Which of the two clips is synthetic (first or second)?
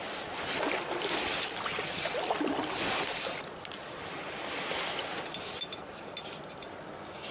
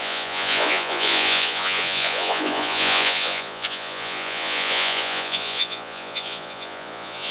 second